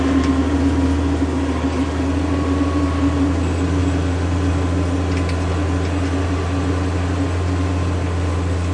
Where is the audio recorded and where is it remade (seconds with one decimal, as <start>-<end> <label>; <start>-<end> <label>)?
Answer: 0.0-8.7 recorded